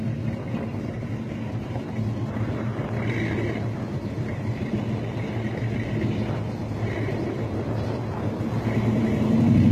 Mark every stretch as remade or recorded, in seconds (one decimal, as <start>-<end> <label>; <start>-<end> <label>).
0.0-0.7 recorded; 0.7-4.8 remade; 4.8-9.7 recorded